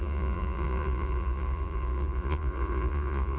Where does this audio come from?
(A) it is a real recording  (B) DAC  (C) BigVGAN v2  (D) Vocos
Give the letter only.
D